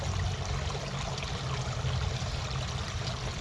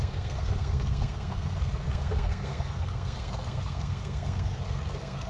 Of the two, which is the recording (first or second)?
first